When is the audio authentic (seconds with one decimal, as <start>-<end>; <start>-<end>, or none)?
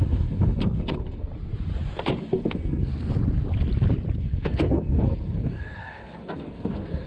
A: 1.3-2.2; 2.9-4.2